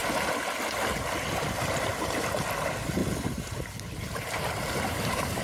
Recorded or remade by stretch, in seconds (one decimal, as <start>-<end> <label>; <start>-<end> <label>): 0.0-3.0 recorded; 3.0-5.4 remade